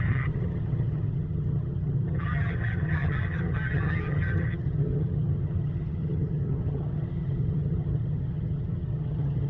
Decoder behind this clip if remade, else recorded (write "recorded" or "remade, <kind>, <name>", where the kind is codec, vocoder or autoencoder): remade, vocoder, HiFi-GAN